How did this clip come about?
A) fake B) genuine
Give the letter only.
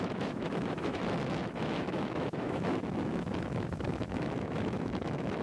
A